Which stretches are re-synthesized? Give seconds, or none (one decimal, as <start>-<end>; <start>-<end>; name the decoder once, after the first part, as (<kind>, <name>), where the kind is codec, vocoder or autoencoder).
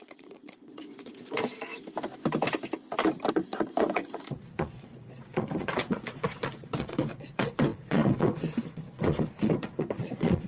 0.0-1.7 (vocoder, Vocos); 3.3-10.5